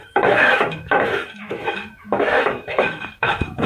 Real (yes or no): no